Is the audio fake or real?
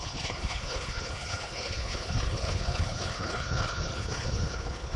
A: fake